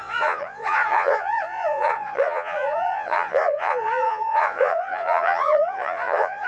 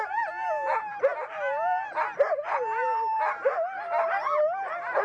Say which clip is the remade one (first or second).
first